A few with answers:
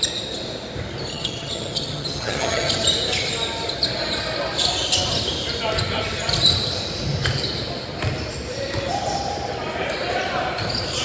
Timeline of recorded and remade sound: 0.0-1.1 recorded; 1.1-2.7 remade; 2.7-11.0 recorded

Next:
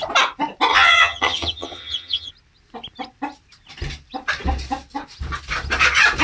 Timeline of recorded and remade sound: 0.0-0.7 recorded; 0.7-2.3 remade; 2.3-6.2 recorded